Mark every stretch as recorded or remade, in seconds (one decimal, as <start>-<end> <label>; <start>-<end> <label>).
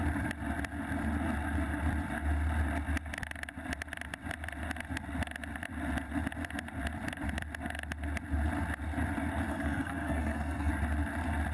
0.0-9.5 recorded; 9.5-10.7 remade; 10.7-11.5 recorded